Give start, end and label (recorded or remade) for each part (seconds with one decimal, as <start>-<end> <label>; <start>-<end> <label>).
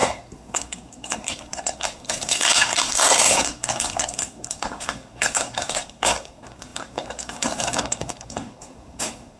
0.0-9.4 remade